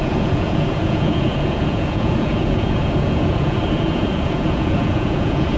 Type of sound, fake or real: fake